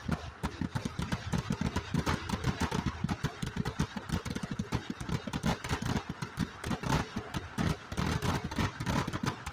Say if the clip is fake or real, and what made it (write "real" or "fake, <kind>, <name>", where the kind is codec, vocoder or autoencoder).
real